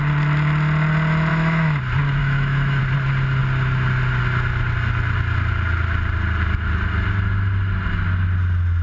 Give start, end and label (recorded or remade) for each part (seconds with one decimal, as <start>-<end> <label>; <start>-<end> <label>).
0.0-1.3 recorded; 1.3-1.8 remade; 1.8-2.2 recorded; 2.2-2.8 remade; 2.8-8.8 recorded